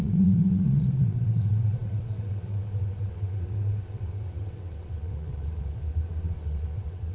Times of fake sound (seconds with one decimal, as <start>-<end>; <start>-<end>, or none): 0.0-7.1